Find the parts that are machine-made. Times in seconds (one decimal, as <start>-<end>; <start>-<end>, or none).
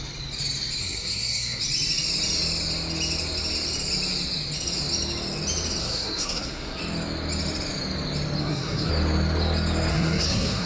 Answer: 0.8-1.6; 5.8-6.8; 8.4-8.9; 9.9-10.7